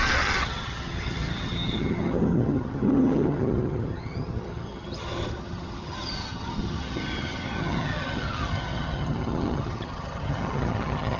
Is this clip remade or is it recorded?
remade